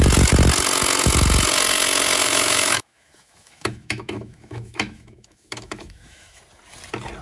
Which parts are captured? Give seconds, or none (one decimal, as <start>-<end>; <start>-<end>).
0.0-2.2; 6.4-7.2